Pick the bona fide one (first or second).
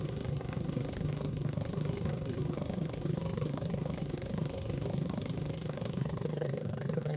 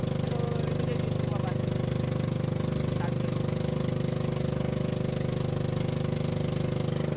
second